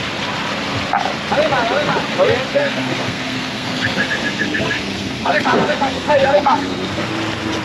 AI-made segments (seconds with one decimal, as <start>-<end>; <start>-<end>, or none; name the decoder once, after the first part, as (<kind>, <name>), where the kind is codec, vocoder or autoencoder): 2.5-7.1 (codec, SNAC)